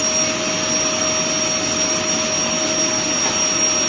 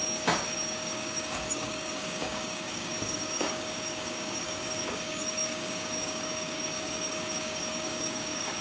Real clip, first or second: first